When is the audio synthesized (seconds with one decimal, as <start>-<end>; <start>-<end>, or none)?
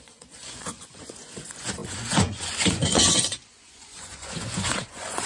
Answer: 0.0-5.3